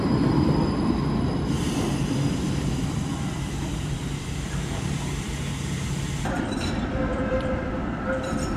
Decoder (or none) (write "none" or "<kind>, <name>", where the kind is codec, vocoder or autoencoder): vocoder, BigVGAN v2